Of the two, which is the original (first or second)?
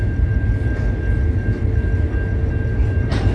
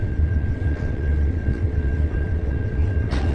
first